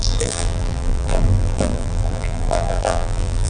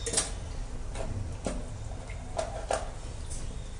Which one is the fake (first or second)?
first